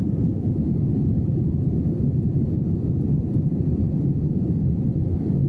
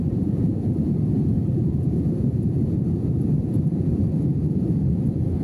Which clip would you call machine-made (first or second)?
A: second